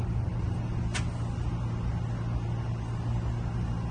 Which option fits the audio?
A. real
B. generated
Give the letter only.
A